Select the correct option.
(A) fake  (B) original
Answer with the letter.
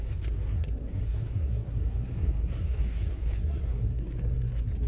A